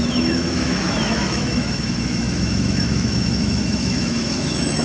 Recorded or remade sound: remade